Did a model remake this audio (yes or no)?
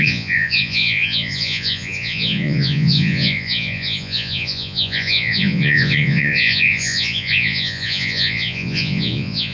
yes